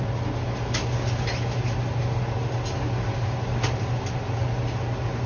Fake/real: real